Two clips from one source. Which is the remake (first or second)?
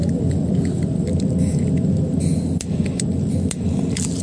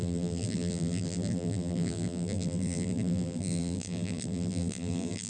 second